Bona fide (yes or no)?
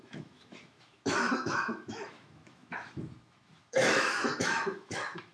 no